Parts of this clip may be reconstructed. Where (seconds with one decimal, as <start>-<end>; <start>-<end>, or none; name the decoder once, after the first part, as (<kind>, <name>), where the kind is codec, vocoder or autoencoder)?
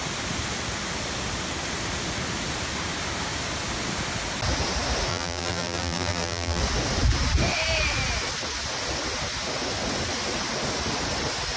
5.1-6.6 (vocoder, BigVGAN v2)